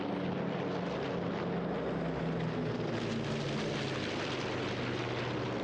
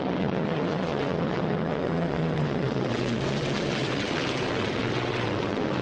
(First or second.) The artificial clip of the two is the second